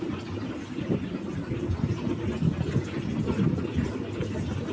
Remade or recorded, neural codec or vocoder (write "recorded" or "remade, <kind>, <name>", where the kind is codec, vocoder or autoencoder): recorded